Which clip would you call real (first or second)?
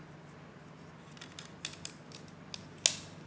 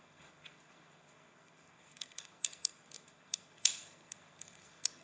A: first